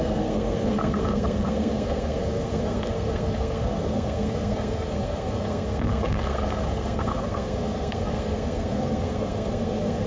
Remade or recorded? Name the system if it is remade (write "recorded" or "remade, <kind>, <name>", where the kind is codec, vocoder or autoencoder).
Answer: remade, codec, SNAC